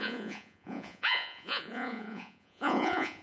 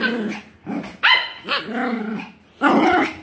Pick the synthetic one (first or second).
first